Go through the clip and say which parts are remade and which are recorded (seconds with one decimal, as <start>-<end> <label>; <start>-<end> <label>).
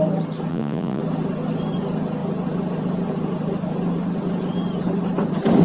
0.0-0.5 recorded; 0.5-1.0 remade; 1.0-5.6 recorded